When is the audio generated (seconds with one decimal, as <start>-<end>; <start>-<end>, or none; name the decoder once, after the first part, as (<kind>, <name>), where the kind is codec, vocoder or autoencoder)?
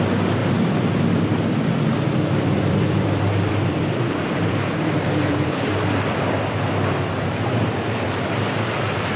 0.4-5.5 (vocoder, BigVGAN v2)